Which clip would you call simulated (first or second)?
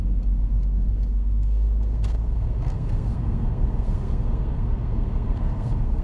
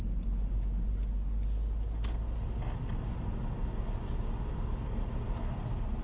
first